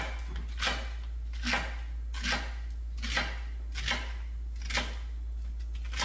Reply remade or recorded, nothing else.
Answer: recorded